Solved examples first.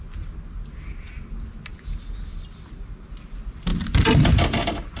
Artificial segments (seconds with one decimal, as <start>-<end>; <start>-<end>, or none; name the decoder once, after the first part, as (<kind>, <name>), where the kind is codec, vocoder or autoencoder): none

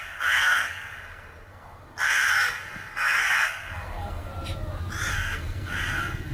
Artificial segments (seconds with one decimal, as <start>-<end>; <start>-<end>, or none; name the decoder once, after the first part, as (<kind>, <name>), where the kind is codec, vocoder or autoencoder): 0.0-4.3 (codec, SNAC); 5.1-6.3

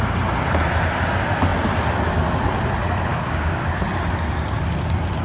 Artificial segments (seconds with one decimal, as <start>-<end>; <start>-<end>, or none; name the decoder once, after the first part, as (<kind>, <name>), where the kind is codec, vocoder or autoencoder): 3.1-3.7 (codec, DAC)

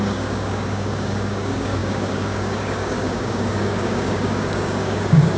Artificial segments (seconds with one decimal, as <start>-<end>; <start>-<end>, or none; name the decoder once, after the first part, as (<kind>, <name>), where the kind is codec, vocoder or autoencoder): 0.0-5.4 (codec, DAC)